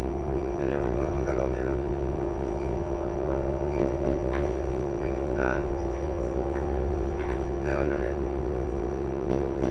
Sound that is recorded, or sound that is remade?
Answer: remade